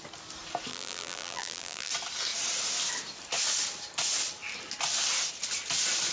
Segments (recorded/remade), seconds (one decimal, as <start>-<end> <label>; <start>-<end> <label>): 0.0-0.7 recorded; 0.7-1.9 remade; 1.9-6.1 recorded